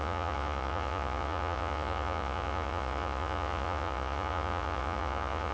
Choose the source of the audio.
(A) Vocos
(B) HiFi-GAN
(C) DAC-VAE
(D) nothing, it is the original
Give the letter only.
A